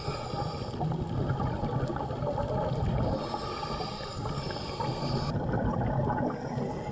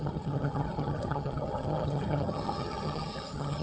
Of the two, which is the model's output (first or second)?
second